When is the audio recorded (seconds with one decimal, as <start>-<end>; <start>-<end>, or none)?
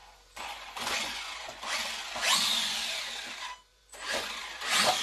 3.0-3.7; 4.6-5.0